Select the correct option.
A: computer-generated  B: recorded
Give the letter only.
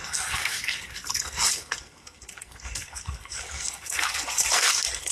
A